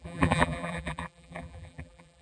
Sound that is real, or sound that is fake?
fake